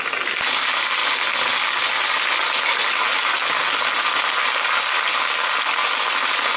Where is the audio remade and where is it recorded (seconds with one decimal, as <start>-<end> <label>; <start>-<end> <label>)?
0.0-6.6 recorded